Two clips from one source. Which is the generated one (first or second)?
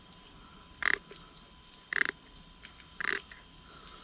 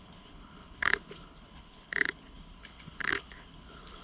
second